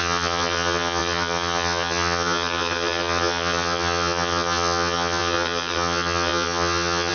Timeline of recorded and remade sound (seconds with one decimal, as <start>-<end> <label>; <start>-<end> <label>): 0.0-7.1 remade